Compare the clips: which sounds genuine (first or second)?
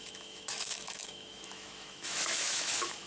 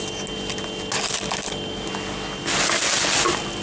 second